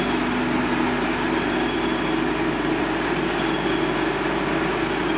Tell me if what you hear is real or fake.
real